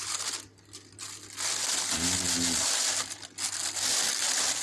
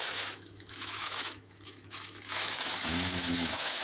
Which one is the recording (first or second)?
first